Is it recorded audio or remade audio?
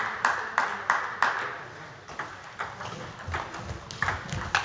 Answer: recorded